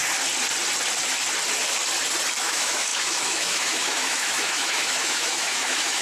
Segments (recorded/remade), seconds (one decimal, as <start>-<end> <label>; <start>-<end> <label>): 0.0-2.4 recorded; 2.4-6.0 remade

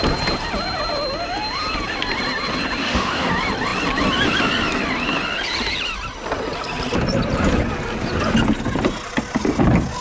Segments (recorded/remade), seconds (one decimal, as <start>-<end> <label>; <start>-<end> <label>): 0.0-2.8 recorded; 2.8-3.3 remade; 3.3-10.0 recorded

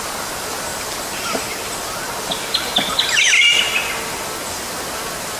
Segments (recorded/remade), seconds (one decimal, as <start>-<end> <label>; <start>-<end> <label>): 0.0-5.4 recorded

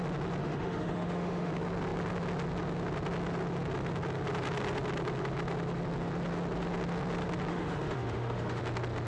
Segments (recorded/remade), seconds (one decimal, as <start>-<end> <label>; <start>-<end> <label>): 0.0-0.4 recorded; 0.4-1.5 remade; 1.5-7.5 recorded; 7.5-8.6 remade; 8.6-9.1 recorded